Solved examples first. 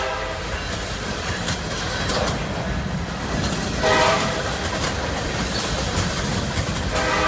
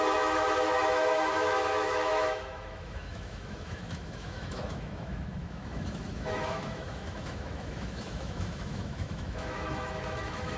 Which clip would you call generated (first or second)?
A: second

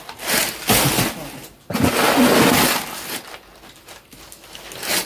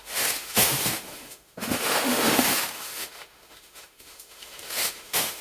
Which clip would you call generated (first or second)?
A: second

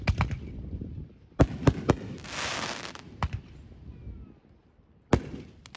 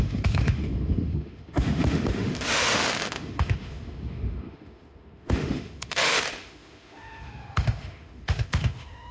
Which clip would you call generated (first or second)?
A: second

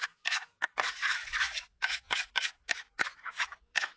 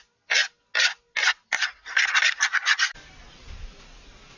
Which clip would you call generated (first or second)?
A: first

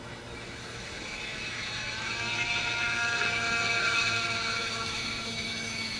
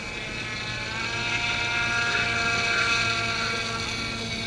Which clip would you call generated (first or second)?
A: first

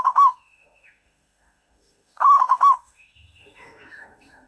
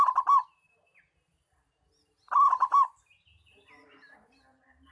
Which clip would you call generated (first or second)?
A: first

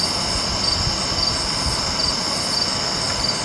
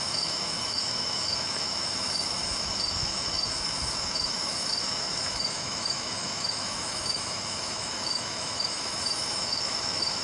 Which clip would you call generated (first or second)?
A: second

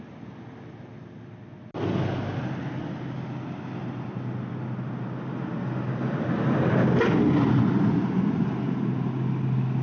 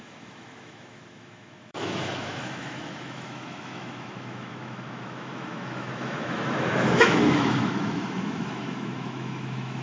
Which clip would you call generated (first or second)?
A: second